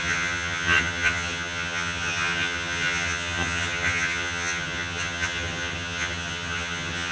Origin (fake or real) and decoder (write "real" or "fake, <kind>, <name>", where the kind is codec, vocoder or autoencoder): fake, vocoder, HiFi-GAN